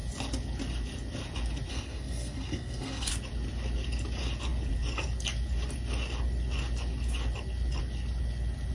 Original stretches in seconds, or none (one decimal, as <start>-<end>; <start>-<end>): 0.0-1.7; 3.1-8.7